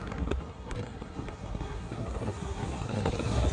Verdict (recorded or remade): remade